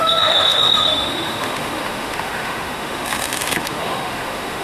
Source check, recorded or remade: remade